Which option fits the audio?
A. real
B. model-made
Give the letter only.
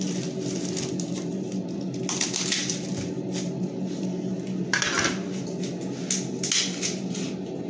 A